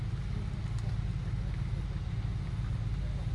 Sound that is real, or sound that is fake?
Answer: real